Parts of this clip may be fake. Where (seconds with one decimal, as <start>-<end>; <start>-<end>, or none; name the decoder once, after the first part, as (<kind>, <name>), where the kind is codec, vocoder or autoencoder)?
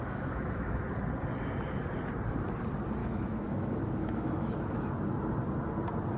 0.0-0.8 (autoencoder, DAC-VAE); 3.0-4.9